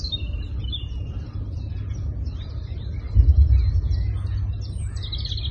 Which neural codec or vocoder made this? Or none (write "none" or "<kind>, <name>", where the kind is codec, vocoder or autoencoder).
none